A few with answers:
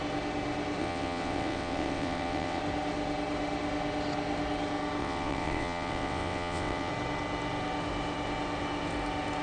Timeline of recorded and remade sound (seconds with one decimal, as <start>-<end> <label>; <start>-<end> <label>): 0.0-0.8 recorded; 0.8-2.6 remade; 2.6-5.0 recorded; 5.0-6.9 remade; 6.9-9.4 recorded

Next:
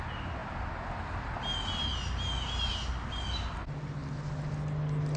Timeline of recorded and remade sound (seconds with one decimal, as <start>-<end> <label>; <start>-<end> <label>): 0.0-5.2 recorded

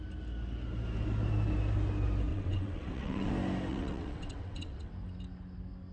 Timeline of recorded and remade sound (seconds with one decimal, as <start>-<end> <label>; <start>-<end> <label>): 0.0-2.3 recorded; 2.3-3.3 remade; 3.3-3.7 recorded; 3.7-4.9 remade; 4.9-5.9 recorded

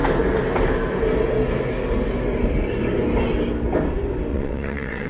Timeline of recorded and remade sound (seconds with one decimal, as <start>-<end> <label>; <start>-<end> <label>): 0.0-4.3 recorded; 4.3-5.1 remade

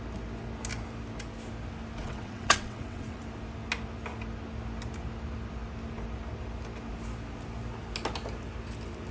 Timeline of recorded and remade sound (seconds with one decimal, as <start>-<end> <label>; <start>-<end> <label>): 0.0-2.0 recorded; 2.0-3.2 remade; 3.2-9.1 recorded

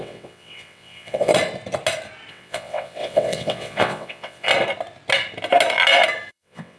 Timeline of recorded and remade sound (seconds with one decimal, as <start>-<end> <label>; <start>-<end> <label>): 0.0-1.3 remade; 1.3-2.3 recorded; 2.3-4.5 remade; 4.5-6.3 recorded; 6.3-6.8 remade

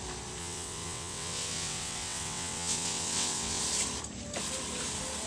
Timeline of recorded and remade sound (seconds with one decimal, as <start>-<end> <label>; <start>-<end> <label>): 0.0-0.4 recorded; 0.4-3.6 remade; 3.6-5.3 recorded